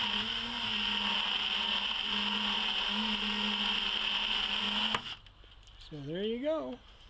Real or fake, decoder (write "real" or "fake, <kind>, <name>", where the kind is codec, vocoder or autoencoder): real